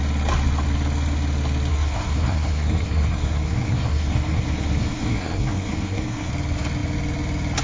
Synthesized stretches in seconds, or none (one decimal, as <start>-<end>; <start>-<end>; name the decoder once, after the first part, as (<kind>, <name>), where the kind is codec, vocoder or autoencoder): 1.7-6.3 (codec, SNAC)